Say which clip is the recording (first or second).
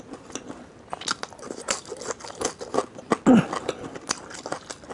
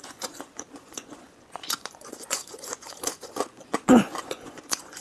first